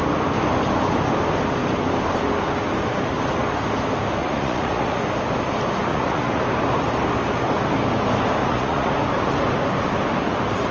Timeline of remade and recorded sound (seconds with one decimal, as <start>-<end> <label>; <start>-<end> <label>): 0.0-4.2 recorded; 4.2-5.0 remade; 5.0-5.9 recorded; 5.9-6.4 remade; 6.4-8.4 recorded; 8.4-8.9 remade; 8.9-10.7 recorded